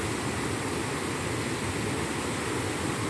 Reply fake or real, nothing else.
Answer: real